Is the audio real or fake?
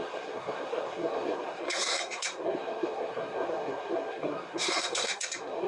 fake